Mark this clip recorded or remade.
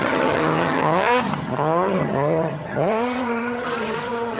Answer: remade